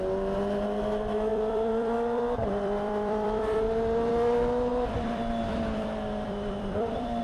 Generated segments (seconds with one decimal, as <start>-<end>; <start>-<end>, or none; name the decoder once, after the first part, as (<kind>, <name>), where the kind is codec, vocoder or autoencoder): 1.3-4.1 (vocoder, BigVGAN v2); 4.7-7.2